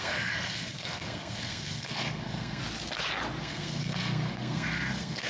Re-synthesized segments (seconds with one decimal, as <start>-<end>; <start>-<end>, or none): 0.0-2.6; 3.4-5.3